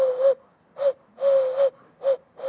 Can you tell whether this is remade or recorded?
recorded